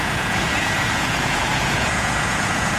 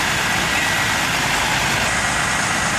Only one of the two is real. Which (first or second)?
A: second